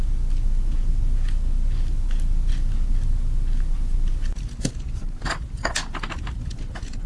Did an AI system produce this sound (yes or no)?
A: no